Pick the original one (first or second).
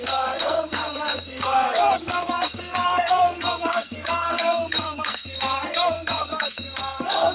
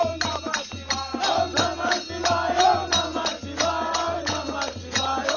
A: second